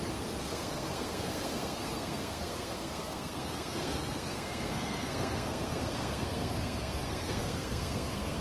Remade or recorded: remade